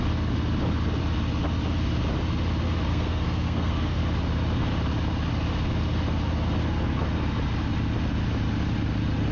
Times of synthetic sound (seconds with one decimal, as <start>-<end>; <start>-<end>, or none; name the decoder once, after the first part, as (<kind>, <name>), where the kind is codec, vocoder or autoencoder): 2.9-4.0 (codec, SNAC)